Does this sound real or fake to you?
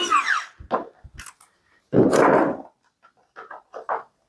real